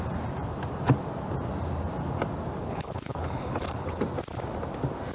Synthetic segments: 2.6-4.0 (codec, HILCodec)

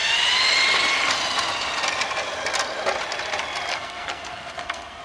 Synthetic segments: 3.7-5.0 (codec, SNAC)

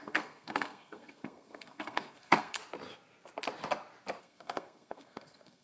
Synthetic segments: 0.0-2.6 (codec, SNAC); 4.2-5.6

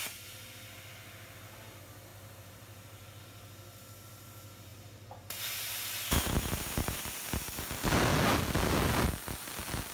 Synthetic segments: 2.1-3.2 (vocoder, BigVGAN v2); 4.7-7.1

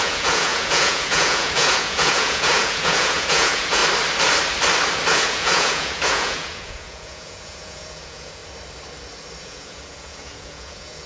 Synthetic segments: 0.0-3.8 (vocoder, Vocos); 5.1-8.4; 9.4-11.1